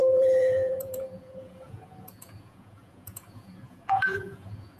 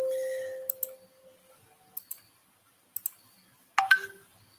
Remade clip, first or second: first